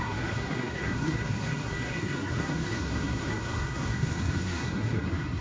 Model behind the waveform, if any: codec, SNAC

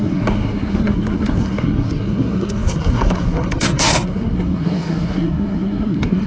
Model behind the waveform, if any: codec, SNAC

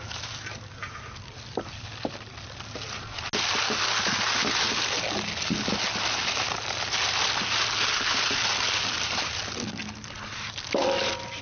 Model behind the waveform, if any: none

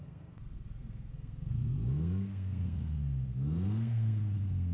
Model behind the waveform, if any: codec, SNAC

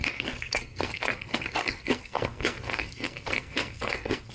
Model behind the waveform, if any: codec, SNAC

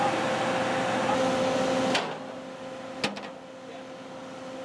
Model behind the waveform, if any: none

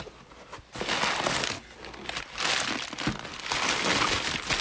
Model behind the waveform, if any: none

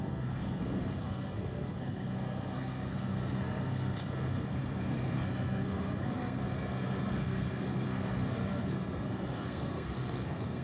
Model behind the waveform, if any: codec, SNAC